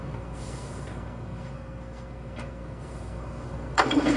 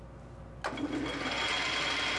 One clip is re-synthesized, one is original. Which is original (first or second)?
second